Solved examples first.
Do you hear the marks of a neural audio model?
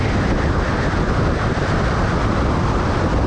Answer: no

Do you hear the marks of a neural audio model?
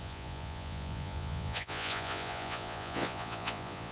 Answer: yes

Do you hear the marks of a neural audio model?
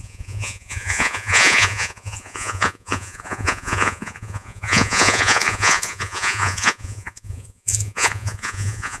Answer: yes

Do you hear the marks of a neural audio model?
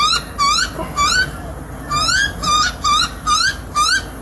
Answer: no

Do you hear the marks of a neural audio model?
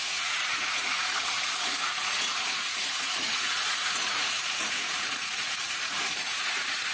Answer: yes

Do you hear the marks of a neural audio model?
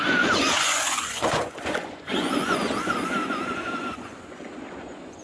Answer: yes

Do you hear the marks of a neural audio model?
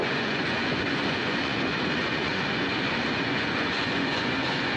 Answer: yes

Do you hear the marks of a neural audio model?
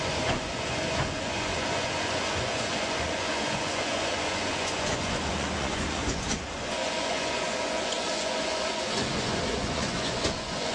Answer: yes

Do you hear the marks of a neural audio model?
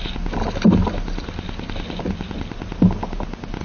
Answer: no